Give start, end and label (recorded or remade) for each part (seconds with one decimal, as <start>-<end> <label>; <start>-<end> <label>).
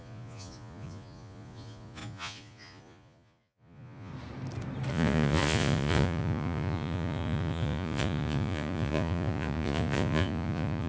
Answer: 0.0-4.1 remade; 4.1-4.9 recorded; 4.9-10.9 remade